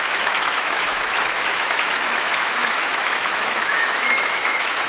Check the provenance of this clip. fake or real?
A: fake